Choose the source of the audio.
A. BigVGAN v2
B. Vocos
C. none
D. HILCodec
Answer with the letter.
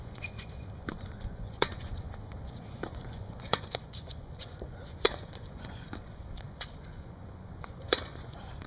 B